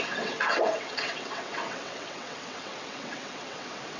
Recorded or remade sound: remade